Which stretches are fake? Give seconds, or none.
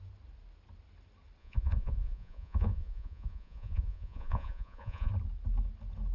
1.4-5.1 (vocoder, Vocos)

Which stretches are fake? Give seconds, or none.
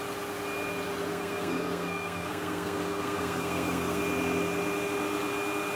1.1-4.0 (codec, SNAC)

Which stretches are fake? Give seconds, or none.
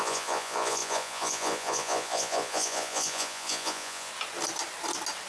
0.0-4.1 (vocoder, Vocos)